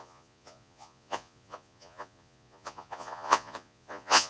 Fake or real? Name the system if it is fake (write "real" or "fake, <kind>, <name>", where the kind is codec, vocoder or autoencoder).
fake, vocoder, Vocos